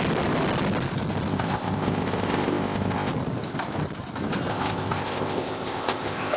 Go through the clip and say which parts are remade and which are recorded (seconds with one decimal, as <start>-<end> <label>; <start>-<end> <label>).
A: 0.0-1.3 recorded; 1.3-3.1 remade; 3.1-4.5 recorded; 4.5-6.4 remade